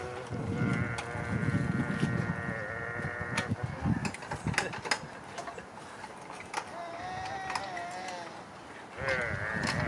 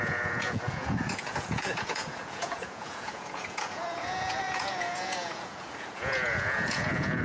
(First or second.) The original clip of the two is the first